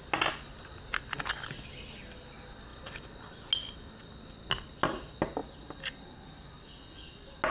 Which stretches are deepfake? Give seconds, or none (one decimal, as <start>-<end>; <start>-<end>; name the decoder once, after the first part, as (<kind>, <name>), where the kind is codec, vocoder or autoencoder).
none